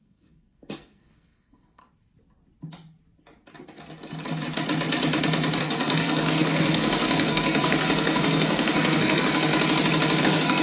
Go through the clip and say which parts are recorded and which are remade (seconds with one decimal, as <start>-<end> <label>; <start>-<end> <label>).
0.0-1.8 remade; 1.8-5.6 recorded; 5.6-9.5 remade; 9.5-10.2 recorded; 10.2-10.6 remade